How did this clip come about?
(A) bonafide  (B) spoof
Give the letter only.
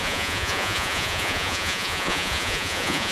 B